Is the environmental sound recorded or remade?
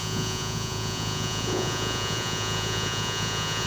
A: remade